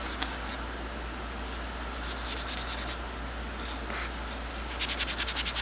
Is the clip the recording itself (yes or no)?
yes